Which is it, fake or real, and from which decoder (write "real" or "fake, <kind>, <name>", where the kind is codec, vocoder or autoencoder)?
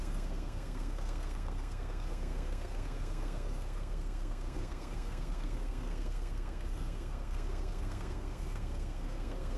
fake, codec, SNAC